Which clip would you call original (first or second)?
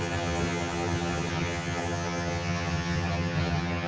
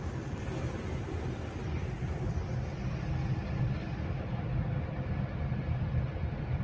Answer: second